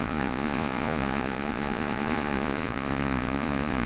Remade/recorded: remade